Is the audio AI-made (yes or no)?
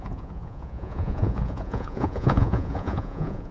yes